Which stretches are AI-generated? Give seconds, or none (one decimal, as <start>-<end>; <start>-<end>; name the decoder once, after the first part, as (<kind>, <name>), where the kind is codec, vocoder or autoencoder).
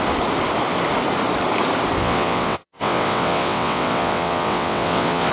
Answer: 2.0-5.3 (vocoder, WaveNeXt)